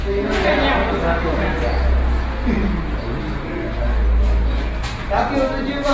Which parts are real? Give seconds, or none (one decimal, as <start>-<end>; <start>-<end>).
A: 0.0-5.9